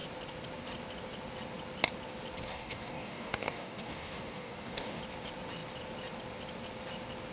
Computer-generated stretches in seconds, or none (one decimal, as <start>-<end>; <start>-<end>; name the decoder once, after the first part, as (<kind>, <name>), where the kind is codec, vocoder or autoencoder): 2.5-5.0 (codec, DAC)